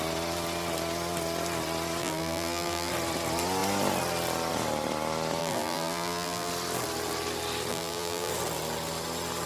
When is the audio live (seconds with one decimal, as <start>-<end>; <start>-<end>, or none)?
0.0-2.0; 2.9-5.4; 6.5-7.7; 8.3-9.5